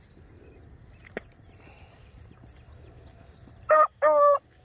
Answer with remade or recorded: recorded